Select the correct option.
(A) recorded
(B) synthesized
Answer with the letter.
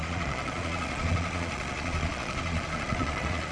B